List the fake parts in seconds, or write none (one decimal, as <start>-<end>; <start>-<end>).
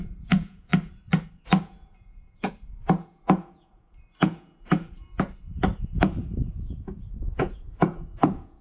0.0-0.7; 1.6-5.1; 5.8-8.6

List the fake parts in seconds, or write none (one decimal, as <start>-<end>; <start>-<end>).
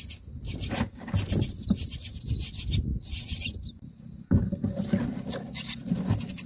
none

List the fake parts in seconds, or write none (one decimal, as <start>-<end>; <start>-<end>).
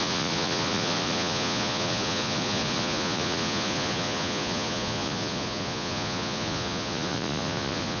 0.0-8.0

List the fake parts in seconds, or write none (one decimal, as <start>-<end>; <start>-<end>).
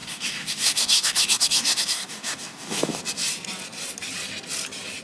0.0-3.0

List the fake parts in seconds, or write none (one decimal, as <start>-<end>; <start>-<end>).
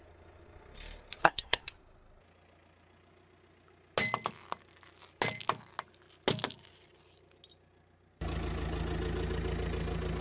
1.2-1.7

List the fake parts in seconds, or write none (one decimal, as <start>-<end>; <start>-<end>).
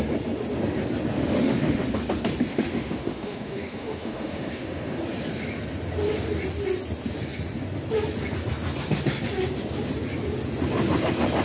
1.1-1.9; 2.5-5.0